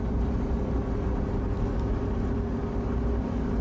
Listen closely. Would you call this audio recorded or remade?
recorded